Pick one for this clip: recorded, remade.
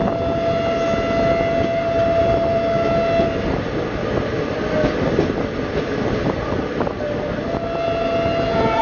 recorded